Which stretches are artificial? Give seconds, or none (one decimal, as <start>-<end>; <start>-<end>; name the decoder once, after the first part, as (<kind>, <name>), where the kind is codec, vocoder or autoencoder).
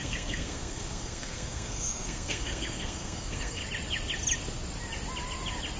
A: 0.0-3.6 (codec, SNAC)